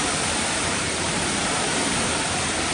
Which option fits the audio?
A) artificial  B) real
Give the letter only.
A